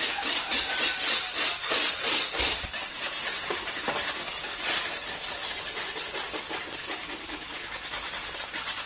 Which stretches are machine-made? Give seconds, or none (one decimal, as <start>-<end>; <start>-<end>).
none